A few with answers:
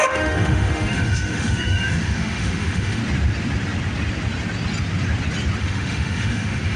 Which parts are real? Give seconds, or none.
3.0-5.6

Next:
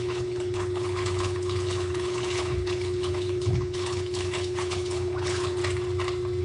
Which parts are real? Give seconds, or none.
5.6-6.4

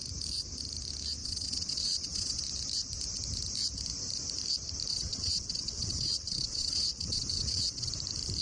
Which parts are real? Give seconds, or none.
0.0-1.2; 2.4-4.9; 7.9-8.4

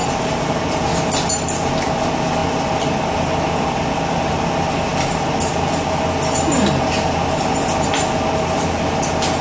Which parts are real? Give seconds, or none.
0.8-9.4